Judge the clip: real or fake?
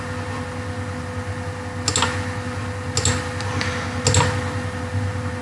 real